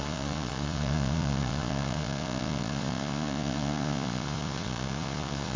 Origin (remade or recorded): remade